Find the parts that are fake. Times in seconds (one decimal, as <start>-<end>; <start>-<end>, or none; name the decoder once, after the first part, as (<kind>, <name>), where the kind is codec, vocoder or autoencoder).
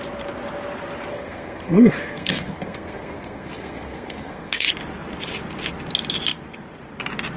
1.1-4.7 (codec, SNAC)